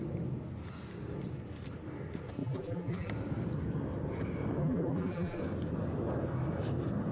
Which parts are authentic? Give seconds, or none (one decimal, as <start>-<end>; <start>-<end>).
0.0-2.4; 3.1-4.6; 5.4-7.1

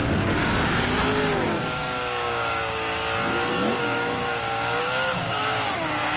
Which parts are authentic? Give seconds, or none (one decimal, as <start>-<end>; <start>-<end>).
3.0-3.8

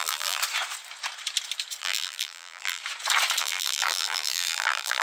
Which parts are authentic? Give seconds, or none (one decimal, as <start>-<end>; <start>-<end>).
0.4-1.8; 2.8-3.4

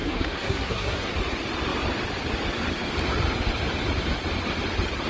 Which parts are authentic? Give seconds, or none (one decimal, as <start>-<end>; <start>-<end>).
1.1-5.1

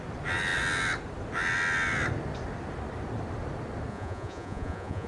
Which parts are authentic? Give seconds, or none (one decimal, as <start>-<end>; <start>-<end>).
0.0-3.9

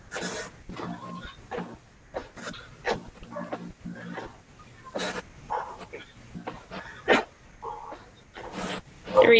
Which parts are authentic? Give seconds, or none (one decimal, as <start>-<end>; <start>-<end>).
0.0-9.4